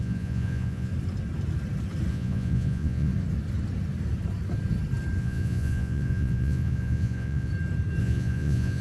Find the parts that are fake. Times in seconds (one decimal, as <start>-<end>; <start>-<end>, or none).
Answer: 0.0-0.9; 2.1-3.1; 5.2-7.5; 8.0-8.8